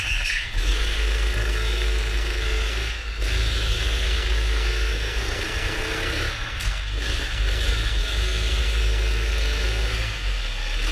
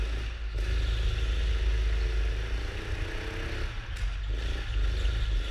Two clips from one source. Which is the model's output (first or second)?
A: first